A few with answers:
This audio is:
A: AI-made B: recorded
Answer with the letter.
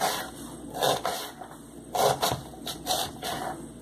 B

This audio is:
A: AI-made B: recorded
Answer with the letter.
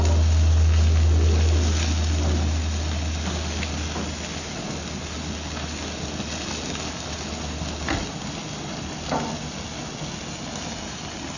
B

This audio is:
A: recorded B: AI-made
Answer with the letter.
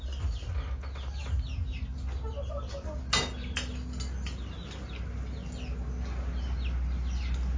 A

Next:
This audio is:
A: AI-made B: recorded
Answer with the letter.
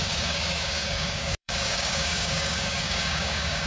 A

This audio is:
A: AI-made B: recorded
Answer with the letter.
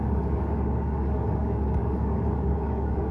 A